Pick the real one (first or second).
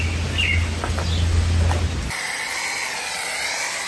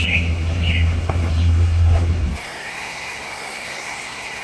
first